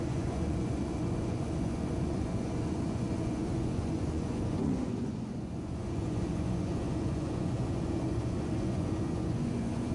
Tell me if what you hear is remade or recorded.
remade